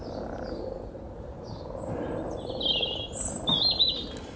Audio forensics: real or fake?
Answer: real